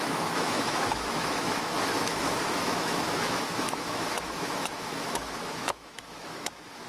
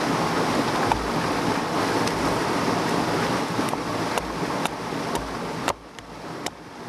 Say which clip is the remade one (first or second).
first